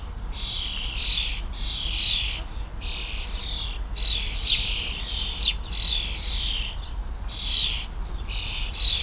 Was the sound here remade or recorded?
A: recorded